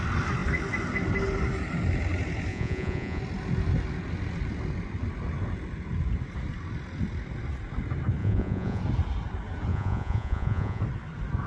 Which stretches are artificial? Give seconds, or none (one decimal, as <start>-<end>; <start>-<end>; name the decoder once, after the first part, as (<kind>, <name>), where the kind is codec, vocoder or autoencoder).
2.5-3.2 (vocoder, Vocos); 8.2-8.8; 9.7-10.8